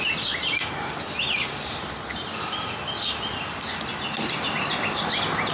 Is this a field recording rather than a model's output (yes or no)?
yes